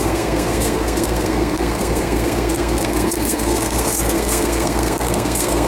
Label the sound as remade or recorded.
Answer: remade